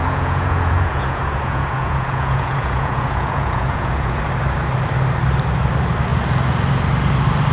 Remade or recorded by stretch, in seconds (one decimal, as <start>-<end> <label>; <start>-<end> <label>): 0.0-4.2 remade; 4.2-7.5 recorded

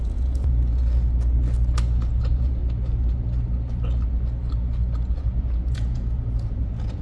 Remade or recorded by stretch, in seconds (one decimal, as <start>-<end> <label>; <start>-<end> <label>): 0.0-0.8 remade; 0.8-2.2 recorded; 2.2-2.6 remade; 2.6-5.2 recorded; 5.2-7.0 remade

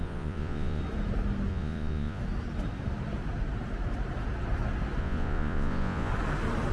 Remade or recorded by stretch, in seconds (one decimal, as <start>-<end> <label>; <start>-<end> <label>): 0.0-0.8 remade; 0.8-1.5 recorded; 1.5-2.2 remade; 2.2-5.0 recorded; 5.0-6.1 remade; 6.1-6.7 recorded

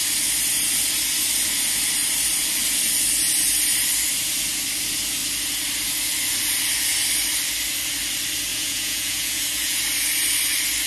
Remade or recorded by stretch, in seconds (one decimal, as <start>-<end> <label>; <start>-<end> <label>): 0.0-8.5 recorded; 8.5-9.8 remade; 9.8-10.9 recorded